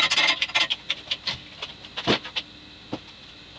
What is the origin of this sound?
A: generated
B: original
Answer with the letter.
B